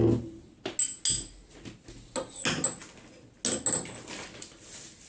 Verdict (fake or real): real